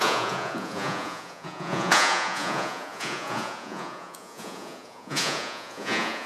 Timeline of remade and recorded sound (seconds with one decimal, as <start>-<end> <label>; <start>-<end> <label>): 0.0-6.3 remade